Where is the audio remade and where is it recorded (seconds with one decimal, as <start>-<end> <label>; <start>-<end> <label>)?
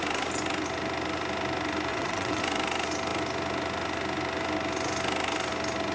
0.0-1.9 recorded; 1.9-2.4 remade; 2.4-5.9 recorded